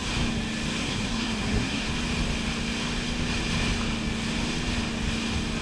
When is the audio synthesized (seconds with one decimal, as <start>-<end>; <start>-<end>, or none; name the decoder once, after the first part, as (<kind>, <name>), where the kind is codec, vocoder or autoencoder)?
0.8-1.9 (codec, SNAC)